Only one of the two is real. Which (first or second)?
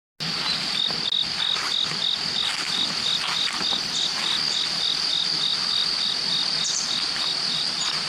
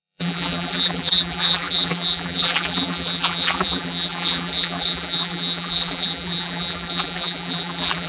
first